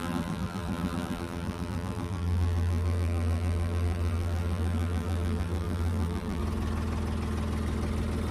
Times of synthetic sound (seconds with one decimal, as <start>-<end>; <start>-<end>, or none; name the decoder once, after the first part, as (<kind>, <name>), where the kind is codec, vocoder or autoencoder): 0.0-6.4 (vocoder, BigVGAN v2)